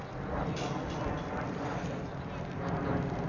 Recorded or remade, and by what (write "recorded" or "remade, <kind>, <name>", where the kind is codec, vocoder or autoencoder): recorded